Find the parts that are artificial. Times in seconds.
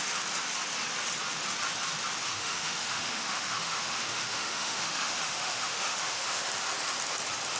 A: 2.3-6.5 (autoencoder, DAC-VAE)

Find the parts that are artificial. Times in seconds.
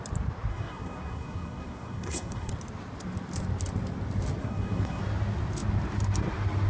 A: 0.5-2.5 (codec, SNAC); 4.4-5.0